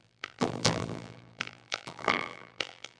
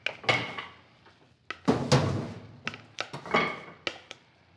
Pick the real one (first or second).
second